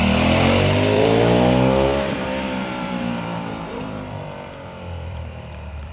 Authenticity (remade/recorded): remade